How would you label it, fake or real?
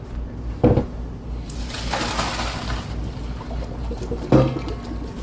real